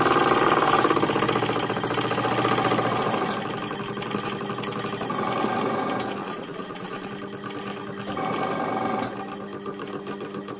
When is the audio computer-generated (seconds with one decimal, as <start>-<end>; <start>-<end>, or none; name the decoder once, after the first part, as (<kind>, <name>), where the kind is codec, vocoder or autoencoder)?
6.2-7.1 (vocoder, Vocos)